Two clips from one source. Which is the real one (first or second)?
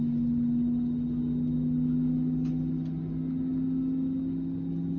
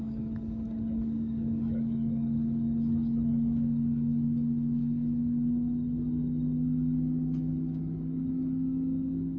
first